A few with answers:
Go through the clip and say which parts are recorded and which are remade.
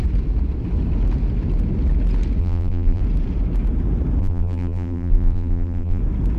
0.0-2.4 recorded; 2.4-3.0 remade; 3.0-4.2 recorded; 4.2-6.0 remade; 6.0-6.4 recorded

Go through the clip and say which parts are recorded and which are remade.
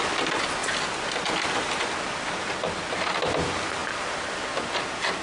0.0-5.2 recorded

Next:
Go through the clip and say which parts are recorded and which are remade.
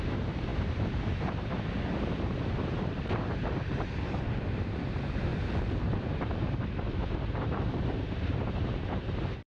0.0-5.3 remade; 5.3-6.0 recorded; 6.0-9.6 remade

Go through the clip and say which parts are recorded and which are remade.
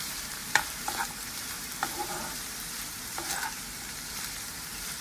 0.0-5.0 remade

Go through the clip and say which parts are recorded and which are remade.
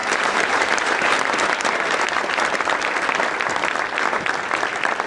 0.0-2.6 remade; 2.6-5.1 recorded